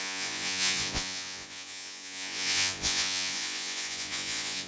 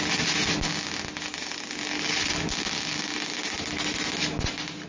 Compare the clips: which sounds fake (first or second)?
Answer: first